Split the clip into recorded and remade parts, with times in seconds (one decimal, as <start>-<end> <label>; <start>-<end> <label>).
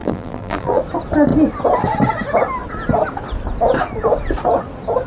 0.0-0.8 remade; 0.8-5.1 recorded